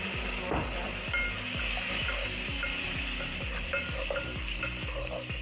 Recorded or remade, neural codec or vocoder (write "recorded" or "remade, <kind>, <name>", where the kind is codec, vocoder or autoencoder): recorded